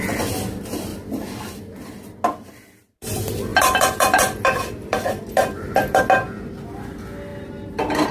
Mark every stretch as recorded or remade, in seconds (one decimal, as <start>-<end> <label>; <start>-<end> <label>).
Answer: 0.0-3.5 recorded; 3.5-6.0 remade; 6.0-8.1 recorded